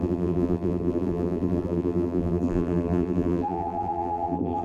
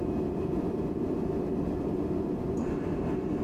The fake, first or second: first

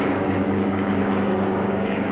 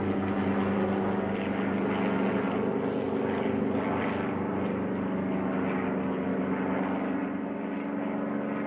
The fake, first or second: first